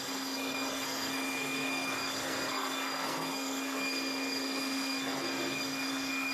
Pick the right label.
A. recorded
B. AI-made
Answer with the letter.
B